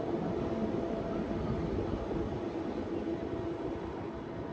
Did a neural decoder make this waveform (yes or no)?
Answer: no